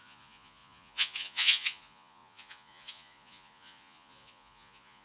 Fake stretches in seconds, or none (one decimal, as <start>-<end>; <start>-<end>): 0.0-5.0